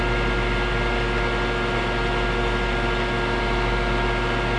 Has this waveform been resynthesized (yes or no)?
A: no